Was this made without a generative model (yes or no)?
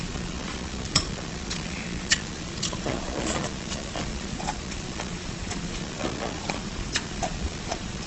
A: no